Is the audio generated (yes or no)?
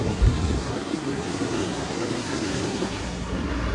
yes